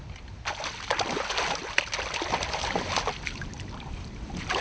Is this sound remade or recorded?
recorded